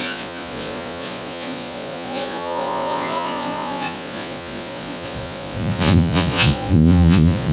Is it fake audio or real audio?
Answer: fake